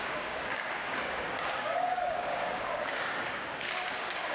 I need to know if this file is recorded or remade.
remade